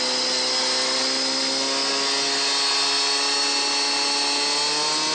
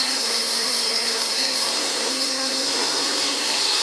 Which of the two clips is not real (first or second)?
second